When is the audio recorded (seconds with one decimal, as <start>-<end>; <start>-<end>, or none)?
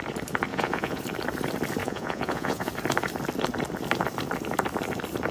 0.0-0.5; 1.0-1.8; 2.7-5.3